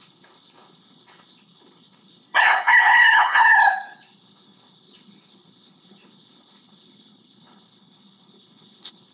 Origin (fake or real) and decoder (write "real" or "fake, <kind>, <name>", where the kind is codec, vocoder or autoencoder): fake, codec, HILCodec